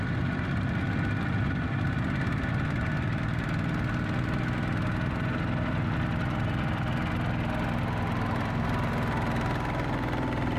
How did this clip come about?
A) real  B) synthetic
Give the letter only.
A